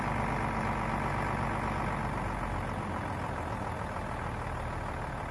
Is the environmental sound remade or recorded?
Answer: recorded